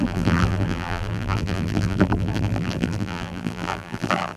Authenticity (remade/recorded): remade